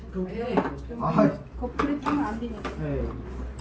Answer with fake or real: real